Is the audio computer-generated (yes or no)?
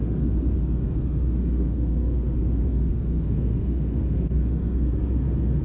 yes